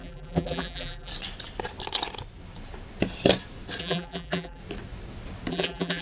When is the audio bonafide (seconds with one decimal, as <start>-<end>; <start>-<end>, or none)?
1.1-3.8; 4.6-5.5